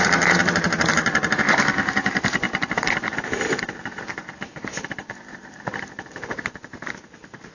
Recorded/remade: remade